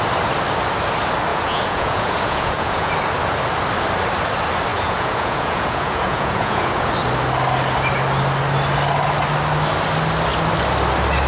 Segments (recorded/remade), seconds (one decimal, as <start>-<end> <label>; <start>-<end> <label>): 0.0-1.3 recorded; 1.3-2.9 remade; 2.9-4.7 recorded; 4.7-6.9 remade; 6.9-11.3 recorded